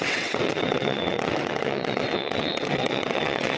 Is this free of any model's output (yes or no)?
no